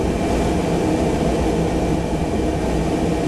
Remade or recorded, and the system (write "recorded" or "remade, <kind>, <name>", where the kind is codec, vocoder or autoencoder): recorded